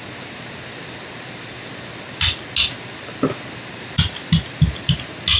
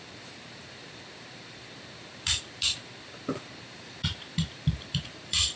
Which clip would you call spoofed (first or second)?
second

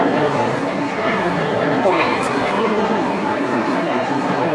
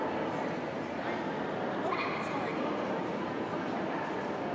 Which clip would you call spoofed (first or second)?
first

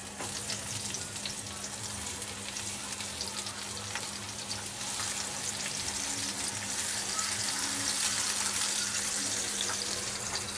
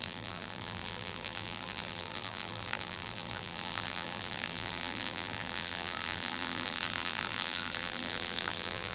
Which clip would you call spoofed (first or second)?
second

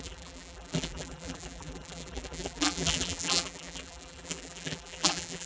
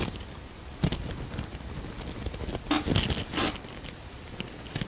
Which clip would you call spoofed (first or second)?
first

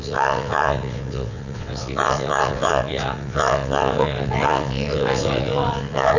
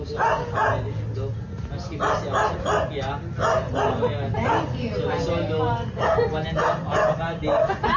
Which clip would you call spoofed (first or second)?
first